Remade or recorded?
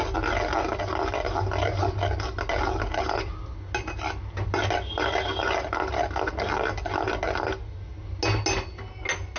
recorded